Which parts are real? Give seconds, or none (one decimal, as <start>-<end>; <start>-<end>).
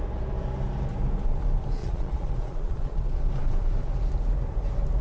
0.0-1.8; 3.0-5.0